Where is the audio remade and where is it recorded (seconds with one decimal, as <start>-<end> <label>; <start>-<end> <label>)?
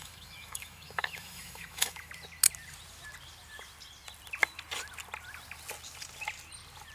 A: 0.0-2.1 remade; 2.1-6.9 recorded